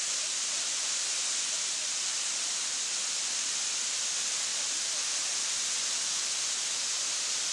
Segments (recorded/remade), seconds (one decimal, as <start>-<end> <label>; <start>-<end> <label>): 0.0-4.5 remade; 4.5-5.6 recorded; 5.6-7.5 remade